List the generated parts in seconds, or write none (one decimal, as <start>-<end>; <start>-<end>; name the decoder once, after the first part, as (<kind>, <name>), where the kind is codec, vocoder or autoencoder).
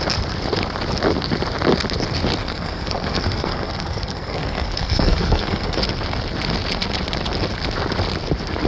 2.4-5.8 (codec, SNAC)